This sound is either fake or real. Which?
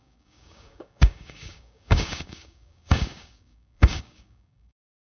fake